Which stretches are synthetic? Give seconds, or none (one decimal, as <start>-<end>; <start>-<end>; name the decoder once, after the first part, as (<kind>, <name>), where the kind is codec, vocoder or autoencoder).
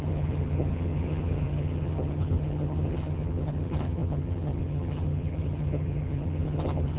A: 0.0-7.0 (vocoder, HiFi-GAN)